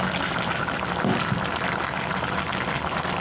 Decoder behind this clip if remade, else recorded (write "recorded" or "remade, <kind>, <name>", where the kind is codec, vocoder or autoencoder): recorded